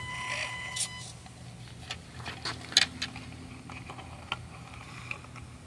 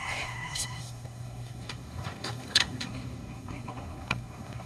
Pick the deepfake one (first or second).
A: second